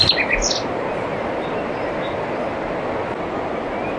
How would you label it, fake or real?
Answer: real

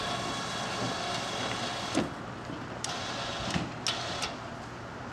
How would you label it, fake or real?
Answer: real